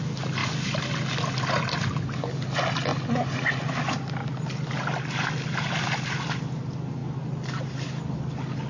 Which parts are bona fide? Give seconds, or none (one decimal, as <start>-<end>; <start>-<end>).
0.0-8.7